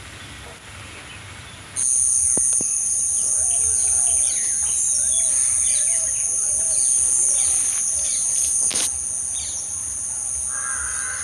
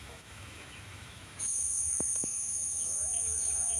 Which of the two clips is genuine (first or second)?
first